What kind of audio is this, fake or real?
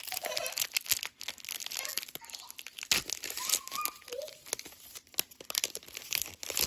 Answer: real